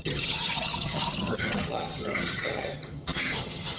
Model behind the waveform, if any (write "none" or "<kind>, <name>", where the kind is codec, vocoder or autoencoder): vocoder, HiFi-GAN